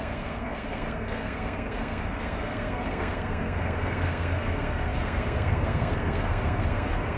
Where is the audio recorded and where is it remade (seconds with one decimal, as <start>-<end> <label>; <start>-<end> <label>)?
0.0-7.2 remade